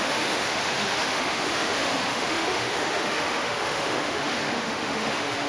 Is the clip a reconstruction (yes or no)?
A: yes